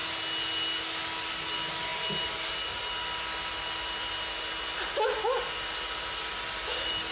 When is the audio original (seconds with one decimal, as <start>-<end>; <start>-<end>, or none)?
0.0-7.1